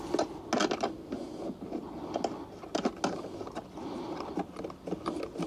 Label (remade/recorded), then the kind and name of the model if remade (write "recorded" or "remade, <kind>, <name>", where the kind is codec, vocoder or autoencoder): recorded